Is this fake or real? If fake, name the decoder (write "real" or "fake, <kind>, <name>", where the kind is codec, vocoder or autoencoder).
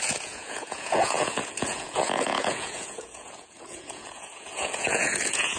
fake, vocoder, Vocos